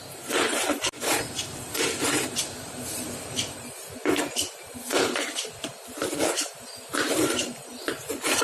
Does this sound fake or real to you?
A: fake